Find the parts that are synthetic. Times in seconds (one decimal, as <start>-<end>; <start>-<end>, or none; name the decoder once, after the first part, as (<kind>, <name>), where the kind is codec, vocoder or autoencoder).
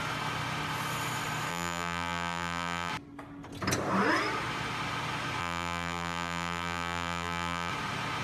1.5-2.9 (vocoder, BigVGAN v2); 5.4-7.7